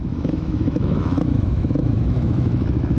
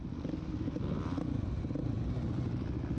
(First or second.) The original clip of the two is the second